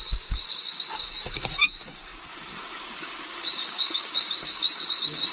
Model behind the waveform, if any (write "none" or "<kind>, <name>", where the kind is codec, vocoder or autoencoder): codec, DAC